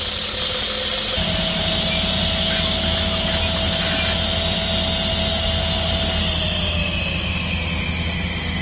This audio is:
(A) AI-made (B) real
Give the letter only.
B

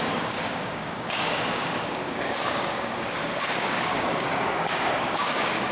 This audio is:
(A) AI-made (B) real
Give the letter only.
A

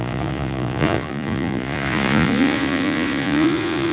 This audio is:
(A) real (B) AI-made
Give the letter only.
B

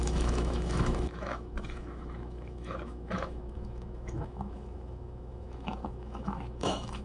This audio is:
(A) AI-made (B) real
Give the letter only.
A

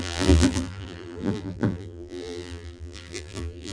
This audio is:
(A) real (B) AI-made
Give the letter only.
B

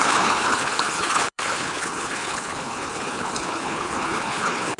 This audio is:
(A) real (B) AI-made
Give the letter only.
B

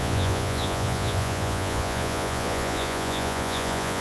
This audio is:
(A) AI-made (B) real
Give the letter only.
A